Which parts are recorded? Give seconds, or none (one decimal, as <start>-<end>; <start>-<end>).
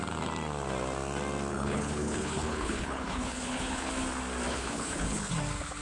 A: 0.0-1.5; 3.9-4.5; 5.3-5.8